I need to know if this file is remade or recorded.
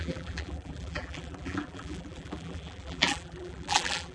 remade